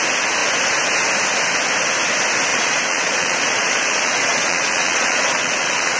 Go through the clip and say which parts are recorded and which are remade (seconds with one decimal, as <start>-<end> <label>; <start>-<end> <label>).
0.0-2.5 recorded; 2.5-6.0 remade